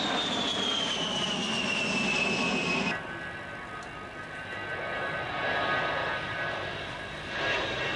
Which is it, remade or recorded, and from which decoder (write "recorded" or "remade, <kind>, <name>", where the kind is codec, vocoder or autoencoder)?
recorded